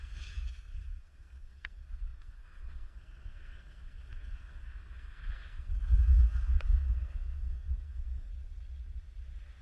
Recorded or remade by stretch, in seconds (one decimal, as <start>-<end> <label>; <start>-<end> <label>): 0.0-8.3 remade; 8.3-9.6 recorded